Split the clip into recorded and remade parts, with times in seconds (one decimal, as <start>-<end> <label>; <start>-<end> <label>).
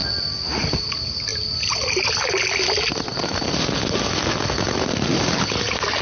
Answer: 0.0-0.7 remade; 0.7-1.3 recorded; 1.3-2.2 remade; 2.2-6.0 recorded